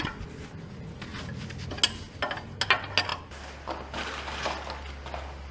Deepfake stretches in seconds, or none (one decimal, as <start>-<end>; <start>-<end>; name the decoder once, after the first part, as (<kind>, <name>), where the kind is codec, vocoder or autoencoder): none